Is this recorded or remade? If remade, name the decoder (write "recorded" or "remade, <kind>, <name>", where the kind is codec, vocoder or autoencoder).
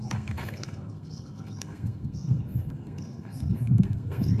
remade, codec, SNAC